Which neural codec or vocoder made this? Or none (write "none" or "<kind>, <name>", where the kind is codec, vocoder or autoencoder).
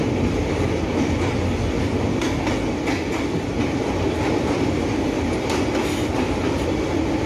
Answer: none